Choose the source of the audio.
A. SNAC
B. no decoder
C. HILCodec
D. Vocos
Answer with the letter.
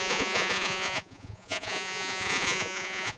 D